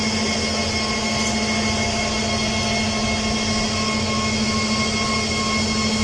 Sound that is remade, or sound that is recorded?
recorded